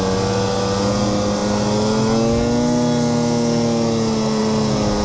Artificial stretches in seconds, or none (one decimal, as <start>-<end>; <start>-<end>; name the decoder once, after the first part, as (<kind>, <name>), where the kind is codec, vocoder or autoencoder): none